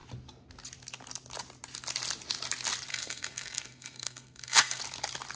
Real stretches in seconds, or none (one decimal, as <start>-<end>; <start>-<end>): 0.0-2.9; 4.8-5.3